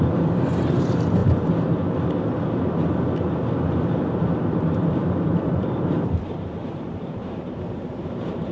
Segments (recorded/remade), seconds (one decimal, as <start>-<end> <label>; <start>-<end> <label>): 0.0-1.2 remade; 1.2-4.0 recorded; 4.0-8.5 remade